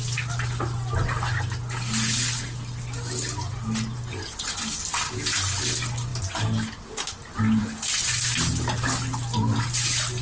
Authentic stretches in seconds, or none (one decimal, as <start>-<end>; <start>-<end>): 0.0-10.2